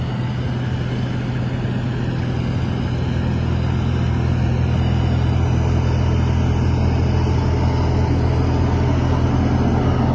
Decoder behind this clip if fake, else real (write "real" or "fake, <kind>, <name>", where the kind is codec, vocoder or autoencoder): real